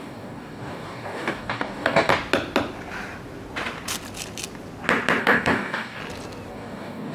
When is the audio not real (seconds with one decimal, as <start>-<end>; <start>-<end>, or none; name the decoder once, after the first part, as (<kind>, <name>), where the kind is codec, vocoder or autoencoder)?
0.0-2.1 (codec, DAC); 5.2-6.0; 6.5-7.1